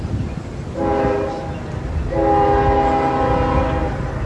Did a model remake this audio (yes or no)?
no